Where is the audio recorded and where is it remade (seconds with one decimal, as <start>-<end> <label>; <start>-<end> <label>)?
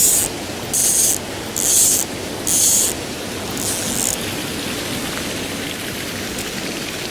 0.0-7.1 recorded